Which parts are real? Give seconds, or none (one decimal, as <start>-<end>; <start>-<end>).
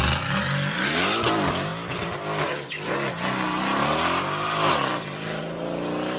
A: 0.0-6.2